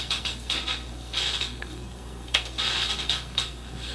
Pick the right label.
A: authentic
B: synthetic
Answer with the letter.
B